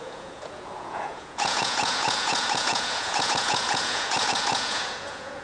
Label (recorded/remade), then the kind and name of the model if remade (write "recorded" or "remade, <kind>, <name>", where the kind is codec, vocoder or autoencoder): remade, vocoder, Vocos